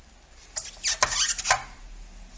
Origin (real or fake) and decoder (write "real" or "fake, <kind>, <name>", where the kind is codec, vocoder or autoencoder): real